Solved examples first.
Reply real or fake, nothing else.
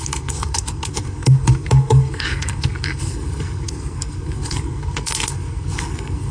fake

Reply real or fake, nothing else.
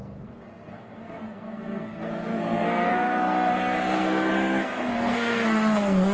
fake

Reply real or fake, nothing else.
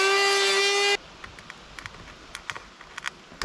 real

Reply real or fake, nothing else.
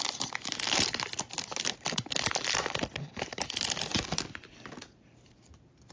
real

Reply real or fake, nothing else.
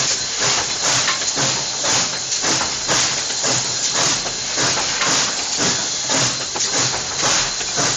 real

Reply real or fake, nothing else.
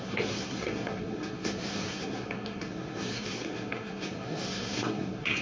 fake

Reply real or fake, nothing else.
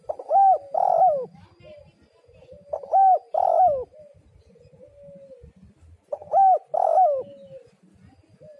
real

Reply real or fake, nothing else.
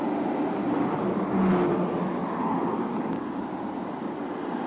real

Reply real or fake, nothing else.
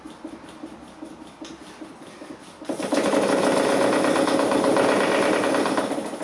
real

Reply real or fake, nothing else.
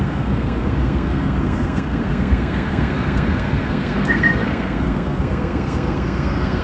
fake